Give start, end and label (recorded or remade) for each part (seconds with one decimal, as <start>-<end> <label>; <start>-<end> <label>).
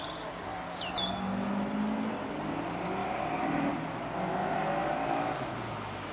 0.0-6.1 recorded